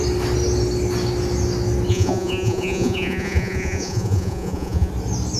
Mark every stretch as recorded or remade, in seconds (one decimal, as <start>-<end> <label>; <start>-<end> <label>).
0.0-1.9 recorded; 1.9-4.9 remade; 4.9-5.4 recorded